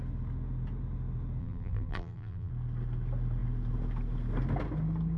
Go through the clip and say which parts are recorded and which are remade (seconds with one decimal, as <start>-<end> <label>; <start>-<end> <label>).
0.0-1.4 recorded; 1.4-2.5 remade; 2.5-5.2 recorded